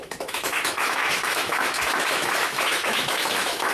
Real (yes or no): no